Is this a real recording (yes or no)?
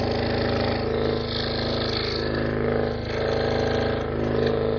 yes